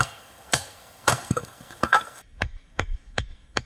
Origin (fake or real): fake